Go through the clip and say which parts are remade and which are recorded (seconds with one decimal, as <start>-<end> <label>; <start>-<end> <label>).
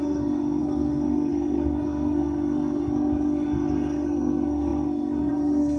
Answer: 0.0-5.8 remade